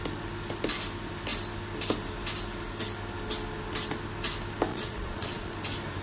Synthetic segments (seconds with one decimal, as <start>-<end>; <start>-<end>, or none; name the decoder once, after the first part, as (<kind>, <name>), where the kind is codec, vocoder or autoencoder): 4.7-5.5 (vocoder, Vocos)